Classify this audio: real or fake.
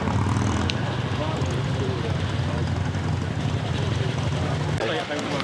real